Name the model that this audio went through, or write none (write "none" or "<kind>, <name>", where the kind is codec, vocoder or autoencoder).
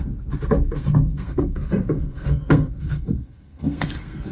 codec, SNAC